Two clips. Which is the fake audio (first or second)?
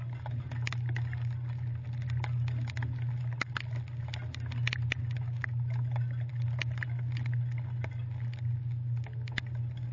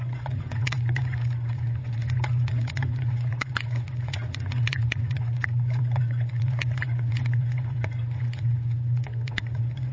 second